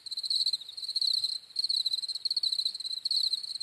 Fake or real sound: fake